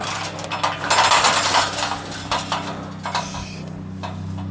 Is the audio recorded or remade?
recorded